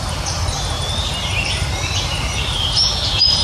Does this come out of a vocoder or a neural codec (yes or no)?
yes